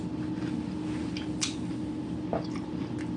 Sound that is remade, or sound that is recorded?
recorded